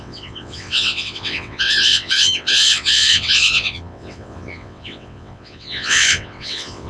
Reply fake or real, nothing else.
fake